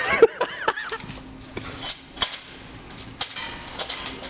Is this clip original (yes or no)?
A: yes